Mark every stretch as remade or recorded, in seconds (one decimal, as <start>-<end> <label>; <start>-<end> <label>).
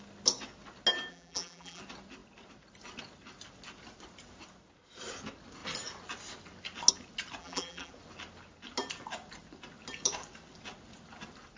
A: 0.0-1.1 recorded; 1.1-1.8 remade; 1.8-7.4 recorded; 7.4-7.9 remade; 7.9-11.6 recorded